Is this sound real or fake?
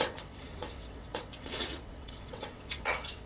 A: fake